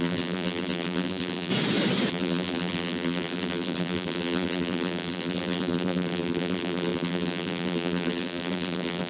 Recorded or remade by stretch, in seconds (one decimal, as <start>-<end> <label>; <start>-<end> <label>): 0.0-1.5 remade; 1.5-2.1 recorded; 2.1-9.1 remade